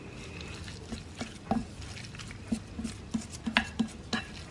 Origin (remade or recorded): recorded